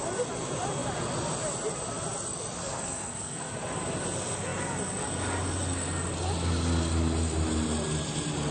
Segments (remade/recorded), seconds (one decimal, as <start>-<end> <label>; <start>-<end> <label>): 0.0-2.6 recorded; 2.6-3.5 remade; 3.5-8.5 recorded